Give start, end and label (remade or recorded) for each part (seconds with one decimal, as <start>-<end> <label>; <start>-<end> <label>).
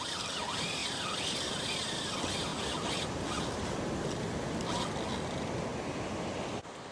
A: 0.0-0.8 recorded; 0.8-1.5 remade; 1.5-5.7 recorded; 5.7-6.9 remade